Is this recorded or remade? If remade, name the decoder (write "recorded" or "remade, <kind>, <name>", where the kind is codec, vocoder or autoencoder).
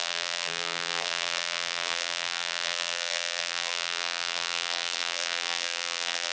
remade, vocoder, BigVGAN v2